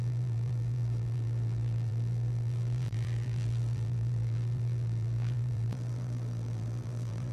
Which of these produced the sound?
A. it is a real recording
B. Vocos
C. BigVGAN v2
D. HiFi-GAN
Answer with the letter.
C